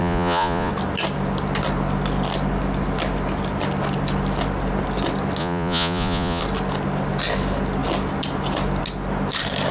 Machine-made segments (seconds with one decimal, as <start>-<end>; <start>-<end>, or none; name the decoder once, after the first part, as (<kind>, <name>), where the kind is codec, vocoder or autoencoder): 0.0-0.7 (vocoder, Vocos); 5.4-6.4